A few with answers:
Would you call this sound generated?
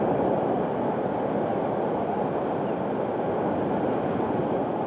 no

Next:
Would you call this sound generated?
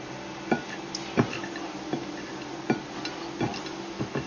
no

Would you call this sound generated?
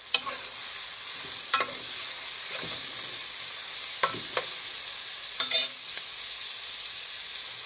no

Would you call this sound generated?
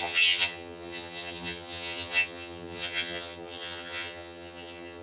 yes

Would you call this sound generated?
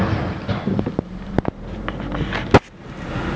no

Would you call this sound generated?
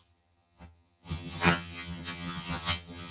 yes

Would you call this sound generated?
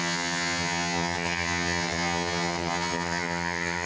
yes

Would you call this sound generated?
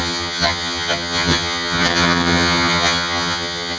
yes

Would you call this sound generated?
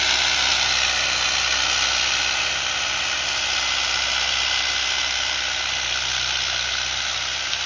no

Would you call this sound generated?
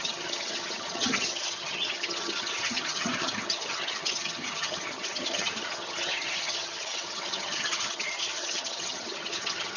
yes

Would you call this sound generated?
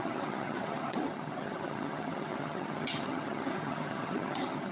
yes